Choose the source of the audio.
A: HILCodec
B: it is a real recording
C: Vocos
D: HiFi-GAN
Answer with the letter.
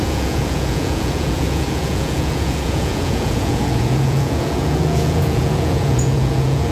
C